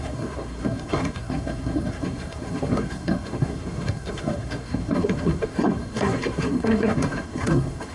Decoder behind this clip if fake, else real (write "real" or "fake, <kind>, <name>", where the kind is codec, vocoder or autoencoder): fake, codec, SNAC